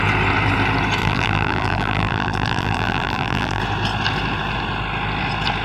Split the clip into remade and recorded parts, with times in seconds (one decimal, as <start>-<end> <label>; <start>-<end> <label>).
0.0-1.0 recorded; 1.0-3.6 remade; 3.6-5.6 recorded